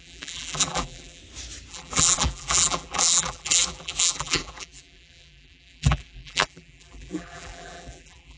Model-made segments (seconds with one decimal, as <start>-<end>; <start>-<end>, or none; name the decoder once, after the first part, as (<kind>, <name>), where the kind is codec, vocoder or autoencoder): 0.0-1.2 (vocoder, BigVGAN v2); 1.7-8.4